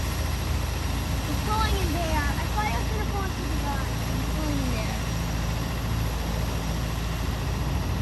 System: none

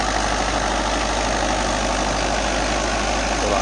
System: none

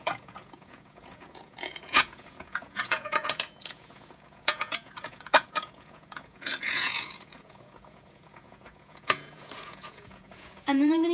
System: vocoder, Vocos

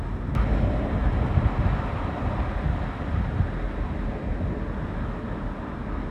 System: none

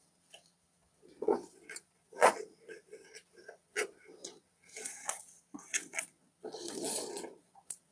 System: vocoder, Vocos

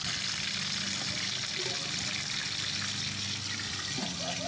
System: none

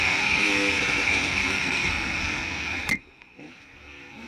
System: codec, SNAC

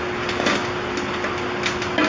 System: none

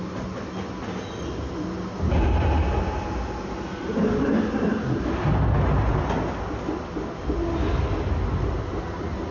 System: none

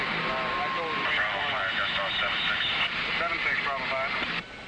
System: none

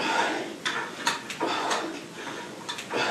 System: vocoder, Vocos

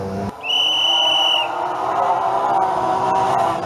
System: none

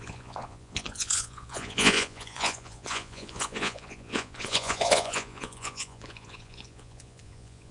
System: vocoder, Vocos